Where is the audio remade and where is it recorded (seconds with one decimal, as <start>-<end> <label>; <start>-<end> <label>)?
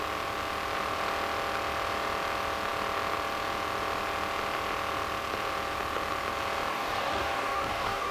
0.0-6.7 recorded; 6.7-8.1 remade